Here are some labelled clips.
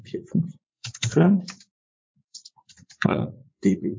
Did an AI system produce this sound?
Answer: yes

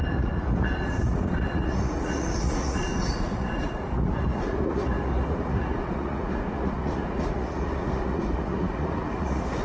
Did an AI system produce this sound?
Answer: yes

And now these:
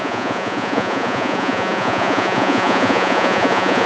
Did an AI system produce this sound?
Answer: yes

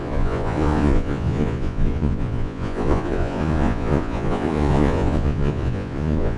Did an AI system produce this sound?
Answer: yes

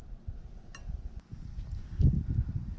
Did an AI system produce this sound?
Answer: no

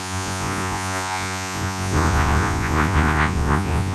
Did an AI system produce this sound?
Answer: yes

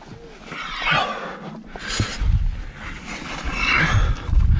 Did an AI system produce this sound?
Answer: no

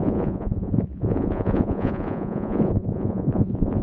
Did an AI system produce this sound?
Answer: yes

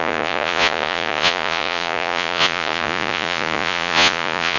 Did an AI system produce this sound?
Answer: yes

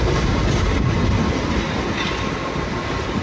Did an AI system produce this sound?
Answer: no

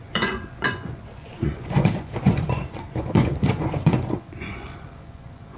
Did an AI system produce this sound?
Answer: yes